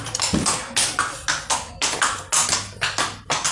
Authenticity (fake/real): real